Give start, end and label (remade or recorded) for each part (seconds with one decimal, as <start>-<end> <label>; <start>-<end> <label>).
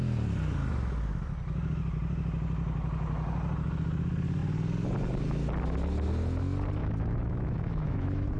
0.0-6.8 recorded; 6.8-8.4 remade